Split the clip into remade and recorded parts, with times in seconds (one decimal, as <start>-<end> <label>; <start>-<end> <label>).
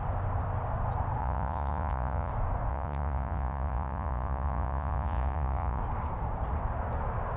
0.0-1.2 recorded; 1.2-2.3 remade; 2.3-2.7 recorded; 2.7-5.8 remade; 5.8-7.4 recorded